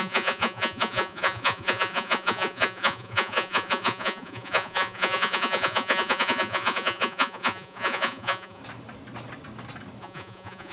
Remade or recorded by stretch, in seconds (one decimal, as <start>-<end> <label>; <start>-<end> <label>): 0.0-8.6 remade; 8.6-10.0 recorded; 10.0-10.7 remade